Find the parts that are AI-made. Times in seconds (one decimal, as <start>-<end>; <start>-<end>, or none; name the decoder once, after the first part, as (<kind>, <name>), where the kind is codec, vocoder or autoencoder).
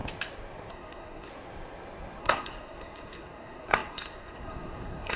0.7-1.3 (codec, SNAC); 2.2-5.2